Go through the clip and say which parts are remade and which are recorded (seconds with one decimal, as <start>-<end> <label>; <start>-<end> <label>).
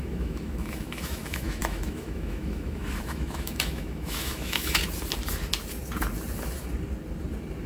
0.0-4.8 remade; 4.8-7.7 recorded